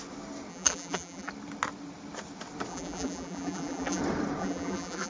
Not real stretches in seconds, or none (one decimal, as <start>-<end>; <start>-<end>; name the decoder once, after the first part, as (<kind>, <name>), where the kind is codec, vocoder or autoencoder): 0.5-1.3 (vocoder, BigVGAN v2); 2.7-4.0; 4.4-5.1